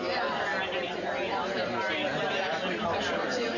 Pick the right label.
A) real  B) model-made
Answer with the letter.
A